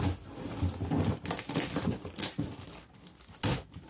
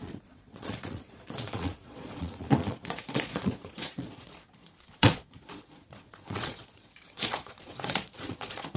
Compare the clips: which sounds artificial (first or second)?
second